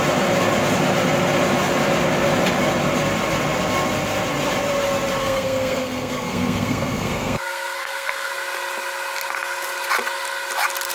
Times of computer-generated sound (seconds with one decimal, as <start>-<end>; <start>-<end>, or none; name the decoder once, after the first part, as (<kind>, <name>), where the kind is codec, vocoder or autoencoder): 5.2-8.3 (codec, SNAC)